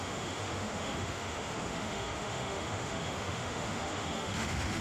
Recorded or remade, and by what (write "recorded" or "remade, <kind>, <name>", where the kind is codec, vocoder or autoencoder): remade, autoencoder, DAC-VAE